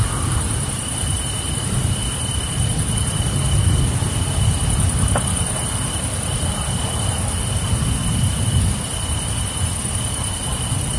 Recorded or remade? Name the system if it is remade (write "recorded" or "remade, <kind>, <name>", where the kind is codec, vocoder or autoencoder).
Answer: recorded